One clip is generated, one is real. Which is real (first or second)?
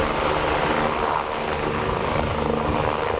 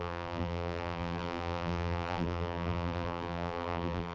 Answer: first